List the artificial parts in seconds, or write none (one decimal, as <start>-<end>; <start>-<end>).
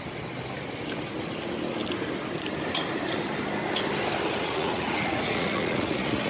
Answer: 4.4-6.3